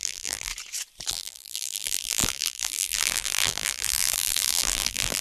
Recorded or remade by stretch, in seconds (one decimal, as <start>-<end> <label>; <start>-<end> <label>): 0.0-0.5 remade; 0.5-1.1 recorded; 1.1-5.2 remade